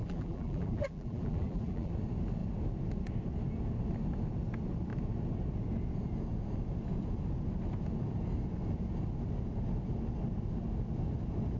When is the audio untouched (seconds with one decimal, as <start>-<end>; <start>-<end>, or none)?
1.9-11.6